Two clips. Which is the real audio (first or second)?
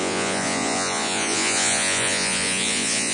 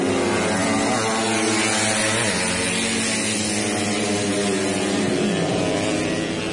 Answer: second